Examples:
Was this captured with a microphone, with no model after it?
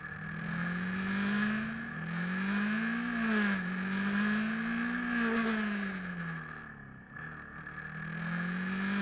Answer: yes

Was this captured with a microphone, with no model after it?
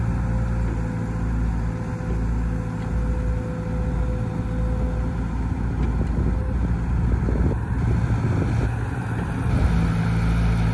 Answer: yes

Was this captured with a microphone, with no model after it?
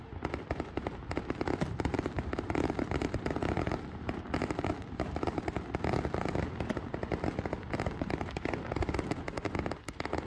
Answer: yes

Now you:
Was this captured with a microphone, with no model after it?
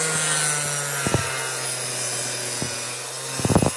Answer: yes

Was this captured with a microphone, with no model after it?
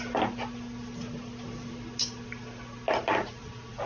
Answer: yes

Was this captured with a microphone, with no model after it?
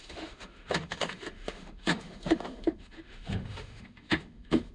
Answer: no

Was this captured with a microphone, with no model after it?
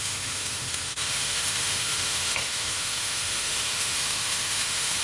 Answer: no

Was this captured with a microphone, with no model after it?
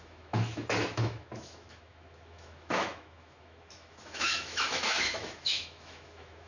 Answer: no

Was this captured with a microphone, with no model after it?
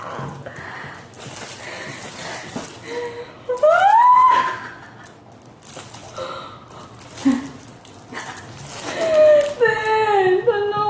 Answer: yes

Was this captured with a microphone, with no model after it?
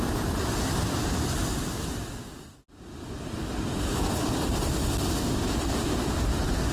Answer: yes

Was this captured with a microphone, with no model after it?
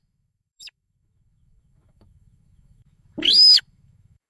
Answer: no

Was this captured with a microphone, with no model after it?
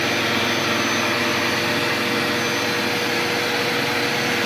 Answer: yes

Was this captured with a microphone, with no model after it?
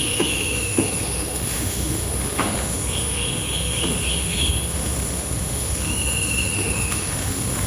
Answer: no